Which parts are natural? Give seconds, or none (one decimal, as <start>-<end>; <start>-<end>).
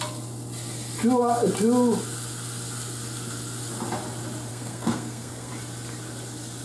0.0-4.5; 5.5-6.6